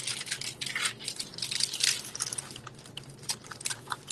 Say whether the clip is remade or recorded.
recorded